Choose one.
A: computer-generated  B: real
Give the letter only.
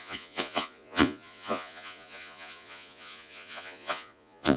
A